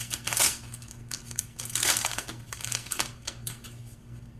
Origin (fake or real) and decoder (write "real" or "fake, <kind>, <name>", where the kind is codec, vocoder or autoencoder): fake, codec, SNAC